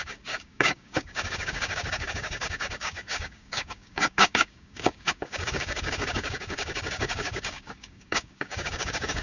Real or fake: fake